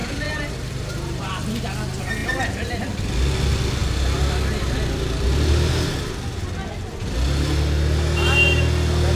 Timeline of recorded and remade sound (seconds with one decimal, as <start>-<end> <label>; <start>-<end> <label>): 0.0-1.3 remade; 1.3-2.2 recorded; 2.2-2.8 remade; 2.8-9.2 recorded